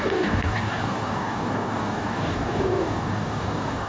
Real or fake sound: fake